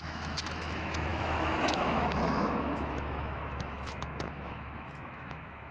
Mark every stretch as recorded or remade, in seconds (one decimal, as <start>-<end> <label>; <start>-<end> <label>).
0.0-5.7 remade